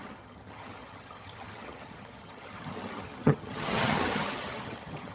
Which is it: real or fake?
fake